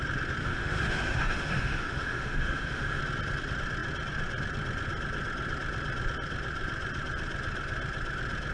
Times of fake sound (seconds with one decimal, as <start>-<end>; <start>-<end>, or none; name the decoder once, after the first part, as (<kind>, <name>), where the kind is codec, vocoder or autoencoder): 0.4-3.0 (autoencoder, DAC-VAE)